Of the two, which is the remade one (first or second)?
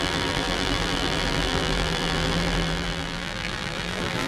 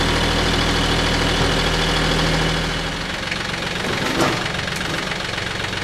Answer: first